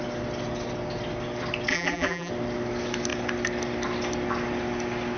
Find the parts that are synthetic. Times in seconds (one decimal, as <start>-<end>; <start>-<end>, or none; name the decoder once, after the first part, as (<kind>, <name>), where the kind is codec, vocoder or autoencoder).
1.7-2.3 (vocoder, BigVGAN v2)